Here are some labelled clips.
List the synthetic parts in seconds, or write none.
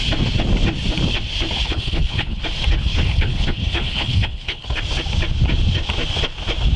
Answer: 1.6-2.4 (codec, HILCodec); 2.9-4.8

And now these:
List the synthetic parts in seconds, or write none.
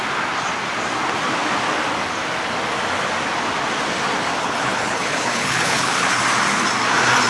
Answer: 4.4-6.2 (codec, HILCodec)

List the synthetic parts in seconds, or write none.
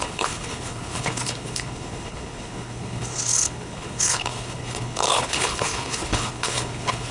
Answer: 0.0-7.1 (codec, HILCodec)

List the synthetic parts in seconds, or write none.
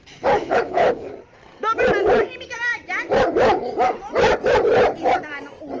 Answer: 0.4-1.1 (codec, HILCodec)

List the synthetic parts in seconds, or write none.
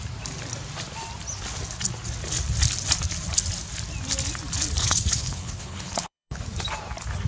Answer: 4.8-6.4 (codec, HILCodec)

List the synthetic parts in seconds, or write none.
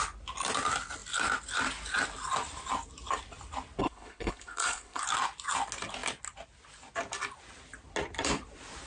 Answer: 3.8-5.0 (codec, HILCodec)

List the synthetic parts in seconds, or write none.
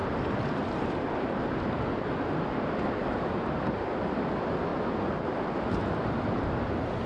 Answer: none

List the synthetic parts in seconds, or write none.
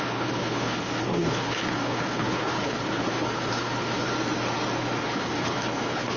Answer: 0.0-4.1 (codec, HILCodec); 5.0-6.2